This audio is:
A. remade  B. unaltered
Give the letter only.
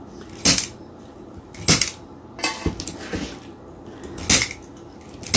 B